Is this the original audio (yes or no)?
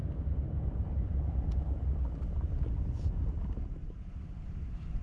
no